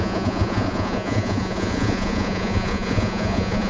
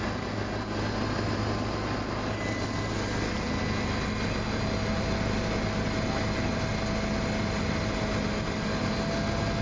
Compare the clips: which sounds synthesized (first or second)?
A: first